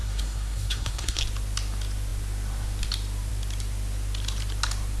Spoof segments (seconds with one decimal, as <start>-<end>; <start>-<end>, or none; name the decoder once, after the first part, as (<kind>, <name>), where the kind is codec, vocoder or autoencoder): 0.0-1.2 (codec, SNAC)